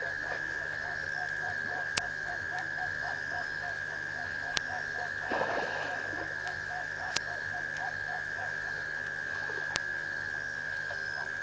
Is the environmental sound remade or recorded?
remade